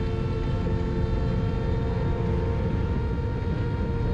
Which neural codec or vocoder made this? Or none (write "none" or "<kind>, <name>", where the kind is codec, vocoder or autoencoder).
none